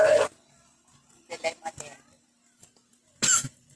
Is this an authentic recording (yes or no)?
yes